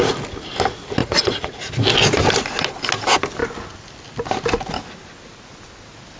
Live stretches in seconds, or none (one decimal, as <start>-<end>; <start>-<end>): 0.0-1.0; 1.7-6.2